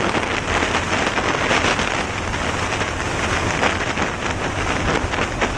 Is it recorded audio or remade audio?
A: recorded